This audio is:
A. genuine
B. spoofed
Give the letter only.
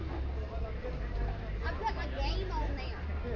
A